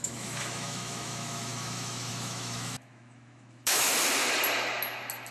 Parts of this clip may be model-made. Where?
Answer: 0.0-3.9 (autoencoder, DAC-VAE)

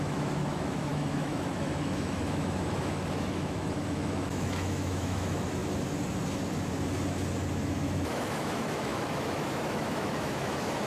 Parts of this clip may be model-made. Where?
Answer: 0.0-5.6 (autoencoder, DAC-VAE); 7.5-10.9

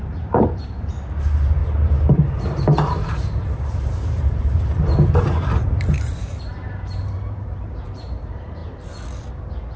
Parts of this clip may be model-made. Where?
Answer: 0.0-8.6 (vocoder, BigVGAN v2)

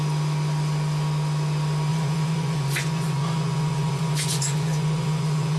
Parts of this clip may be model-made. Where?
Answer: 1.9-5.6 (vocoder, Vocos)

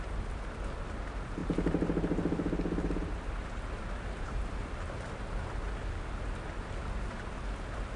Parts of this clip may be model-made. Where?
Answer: none

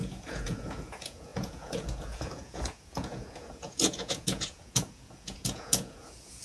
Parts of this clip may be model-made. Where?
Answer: 0.0-6.4 (vocoder, Vocos)

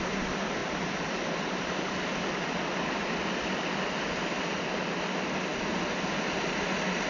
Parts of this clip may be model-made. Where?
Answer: none

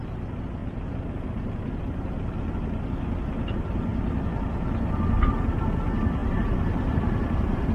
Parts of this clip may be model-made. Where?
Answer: 0.6-2.1 (vocoder, BigVGAN v2); 6.2-7.7